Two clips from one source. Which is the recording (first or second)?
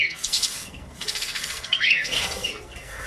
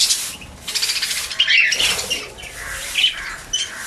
second